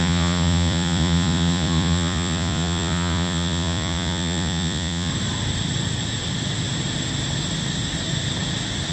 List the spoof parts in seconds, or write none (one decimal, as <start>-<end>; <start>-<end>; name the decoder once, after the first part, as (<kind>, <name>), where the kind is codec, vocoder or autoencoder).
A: 0.0-5.1 (vocoder, Vocos)